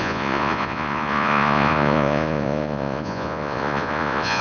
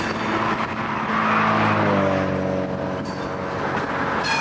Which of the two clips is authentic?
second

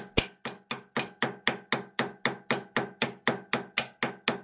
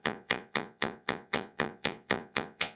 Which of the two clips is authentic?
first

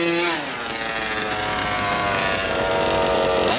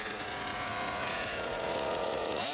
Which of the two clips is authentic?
first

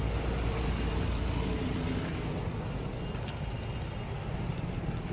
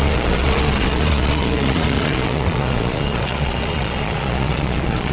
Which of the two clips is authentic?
first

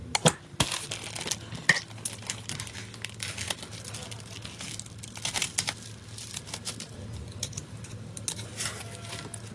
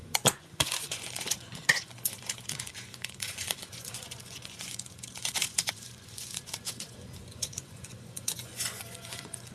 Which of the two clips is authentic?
first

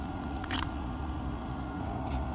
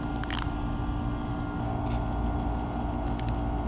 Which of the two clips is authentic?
second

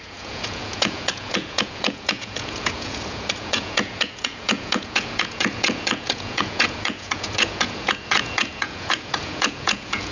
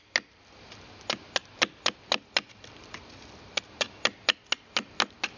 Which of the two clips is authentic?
second